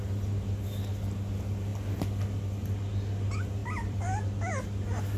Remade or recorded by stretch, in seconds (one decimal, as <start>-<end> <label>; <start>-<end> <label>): 0.0-3.6 recorded; 3.6-4.5 remade; 4.5-5.2 recorded